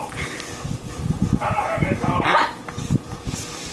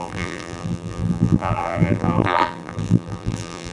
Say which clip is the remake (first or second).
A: second